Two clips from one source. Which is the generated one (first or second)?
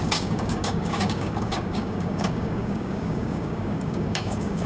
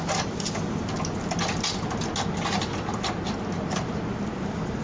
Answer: first